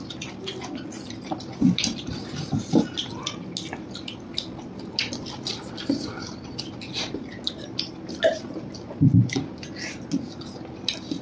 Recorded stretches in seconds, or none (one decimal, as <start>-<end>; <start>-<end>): 0.0-5.0; 7.1-11.2